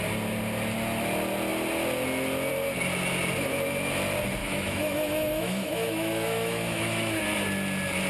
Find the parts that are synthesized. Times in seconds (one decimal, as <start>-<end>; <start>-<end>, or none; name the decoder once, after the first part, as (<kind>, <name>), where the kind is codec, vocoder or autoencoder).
4.4-7.2 (autoencoder, DAC-VAE)